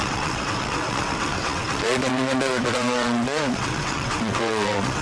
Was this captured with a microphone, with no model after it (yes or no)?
no